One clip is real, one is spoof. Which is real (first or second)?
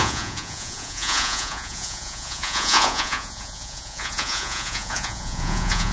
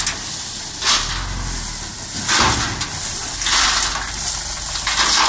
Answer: second